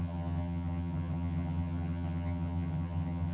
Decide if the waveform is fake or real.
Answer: fake